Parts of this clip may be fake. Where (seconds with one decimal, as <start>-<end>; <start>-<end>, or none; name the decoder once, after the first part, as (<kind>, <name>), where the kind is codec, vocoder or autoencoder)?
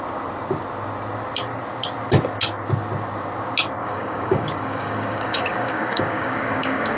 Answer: 3.8-7.0 (codec, DAC)